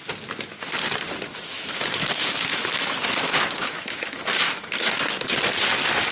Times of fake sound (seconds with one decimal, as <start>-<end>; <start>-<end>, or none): 1.3-5.0